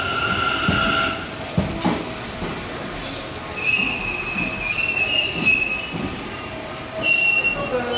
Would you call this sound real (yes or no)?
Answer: yes